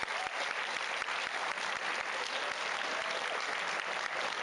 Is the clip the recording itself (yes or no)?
yes